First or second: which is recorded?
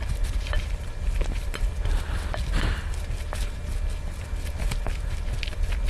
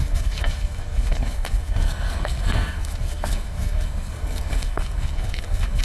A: first